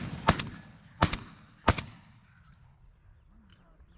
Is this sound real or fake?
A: real